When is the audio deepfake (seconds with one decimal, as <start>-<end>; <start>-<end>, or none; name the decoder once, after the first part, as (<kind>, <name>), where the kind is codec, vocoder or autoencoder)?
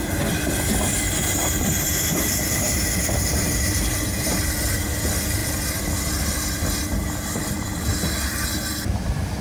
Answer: 1.0-4.0 (vocoder, BigVGAN v2)